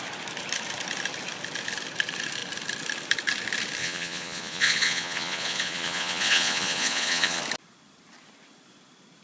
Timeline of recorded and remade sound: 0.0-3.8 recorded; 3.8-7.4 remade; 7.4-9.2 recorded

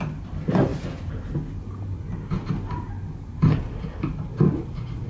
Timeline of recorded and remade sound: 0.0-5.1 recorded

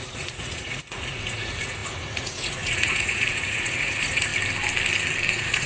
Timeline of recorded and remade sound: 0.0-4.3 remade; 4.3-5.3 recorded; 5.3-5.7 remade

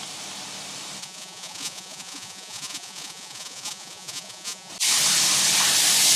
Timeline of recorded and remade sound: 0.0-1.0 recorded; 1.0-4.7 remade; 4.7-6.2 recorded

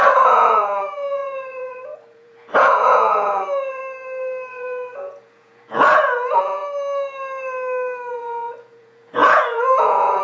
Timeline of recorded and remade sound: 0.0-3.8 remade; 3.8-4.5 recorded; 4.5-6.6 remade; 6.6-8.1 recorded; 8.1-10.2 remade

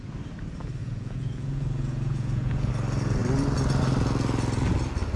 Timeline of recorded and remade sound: 0.0-0.8 recorded; 0.8-2.7 remade; 2.7-5.2 recorded

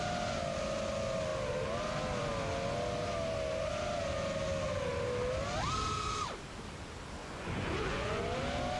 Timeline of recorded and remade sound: 0.0-7.2 recorded; 7.2-8.2 remade; 8.2-8.8 recorded